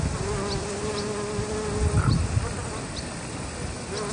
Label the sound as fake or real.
real